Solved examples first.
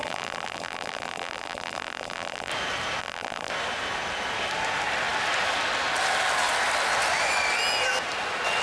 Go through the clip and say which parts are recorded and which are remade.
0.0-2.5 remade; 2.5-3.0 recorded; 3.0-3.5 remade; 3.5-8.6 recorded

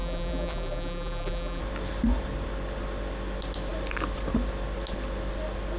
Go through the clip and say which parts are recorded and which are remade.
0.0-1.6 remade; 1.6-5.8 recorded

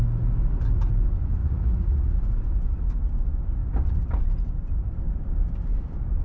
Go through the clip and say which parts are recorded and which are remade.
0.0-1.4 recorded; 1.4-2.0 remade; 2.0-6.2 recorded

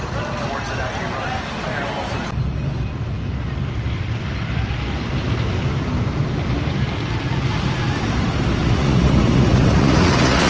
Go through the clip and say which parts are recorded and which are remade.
0.0-8.6 recorded; 8.6-10.5 remade

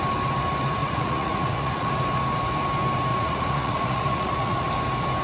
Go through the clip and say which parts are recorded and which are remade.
0.0-0.8 recorded; 0.8-1.9 remade; 1.9-3.1 recorded; 3.1-4.7 remade; 4.7-5.2 recorded